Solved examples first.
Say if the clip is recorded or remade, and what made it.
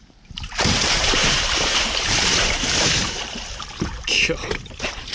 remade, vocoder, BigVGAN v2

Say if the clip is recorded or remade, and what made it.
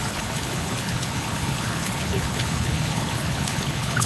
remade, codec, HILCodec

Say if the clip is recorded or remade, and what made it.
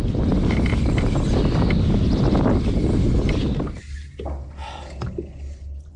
recorded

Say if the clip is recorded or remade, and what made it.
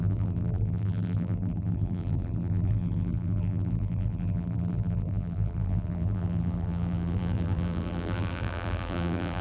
remade, vocoder, BigVGAN v2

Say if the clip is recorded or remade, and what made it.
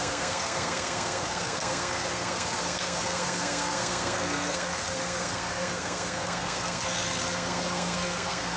remade, codec, SNAC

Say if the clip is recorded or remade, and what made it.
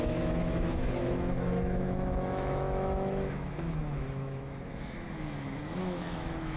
remade, autoencoder, DAC-VAE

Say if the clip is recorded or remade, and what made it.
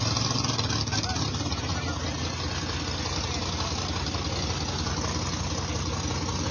recorded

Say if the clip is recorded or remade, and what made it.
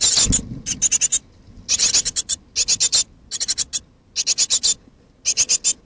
recorded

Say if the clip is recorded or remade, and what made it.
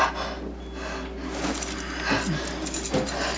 recorded